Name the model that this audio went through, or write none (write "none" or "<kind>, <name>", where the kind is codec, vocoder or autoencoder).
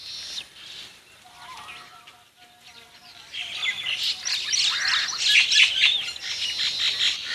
none